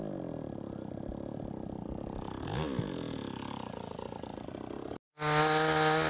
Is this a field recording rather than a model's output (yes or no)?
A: yes